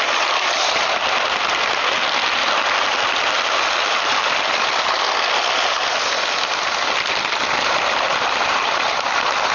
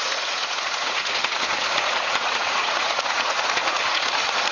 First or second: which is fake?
second